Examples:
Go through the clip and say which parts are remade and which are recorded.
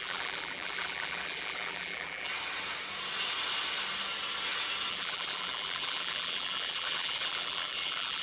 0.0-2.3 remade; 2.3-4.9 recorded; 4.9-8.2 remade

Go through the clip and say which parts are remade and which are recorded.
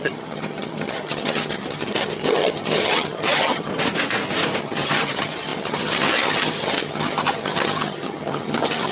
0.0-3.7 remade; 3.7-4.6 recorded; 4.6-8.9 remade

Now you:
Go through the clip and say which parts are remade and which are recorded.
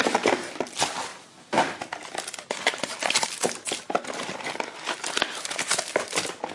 0.0-6.5 recorded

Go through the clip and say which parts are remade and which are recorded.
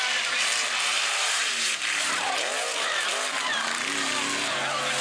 0.0-0.9 recorded; 0.9-3.9 remade; 3.9-5.0 recorded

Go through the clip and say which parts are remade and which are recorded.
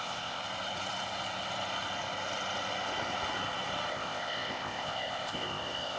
0.0-0.4 remade; 0.4-3.9 recorded; 3.9-6.0 remade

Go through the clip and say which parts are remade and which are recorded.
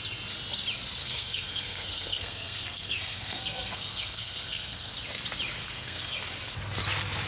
0.0-1.0 recorded; 1.0-4.9 remade; 4.9-5.6 recorded; 5.6-6.2 remade; 6.2-7.3 recorded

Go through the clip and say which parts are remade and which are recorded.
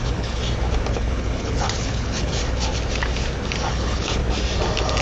0.0-0.4 remade; 0.4-0.9 recorded; 0.9-2.4 remade; 2.4-3.7 recorded; 3.7-4.2 remade; 4.2-5.0 recorded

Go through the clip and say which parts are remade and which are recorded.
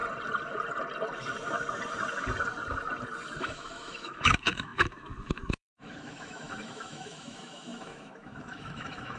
0.0-3.4 recorded; 3.4-9.2 remade